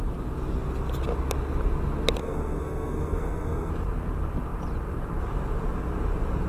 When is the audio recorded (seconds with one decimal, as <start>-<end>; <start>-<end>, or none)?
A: 0.0-2.2; 3.7-6.5